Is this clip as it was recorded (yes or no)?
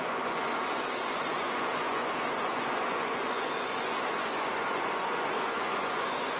no